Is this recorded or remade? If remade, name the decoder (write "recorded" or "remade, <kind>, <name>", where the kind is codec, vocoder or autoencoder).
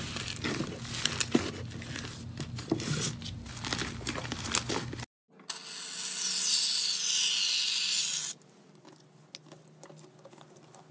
recorded